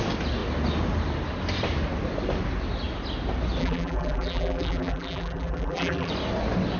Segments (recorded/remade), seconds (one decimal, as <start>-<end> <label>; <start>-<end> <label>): 0.0-3.6 recorded; 3.6-6.1 remade; 6.1-6.8 recorded